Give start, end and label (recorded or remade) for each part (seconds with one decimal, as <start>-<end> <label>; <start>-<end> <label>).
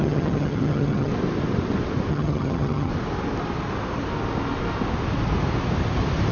0.0-1.1 remade; 1.1-2.1 recorded; 2.1-2.9 remade; 2.9-6.3 recorded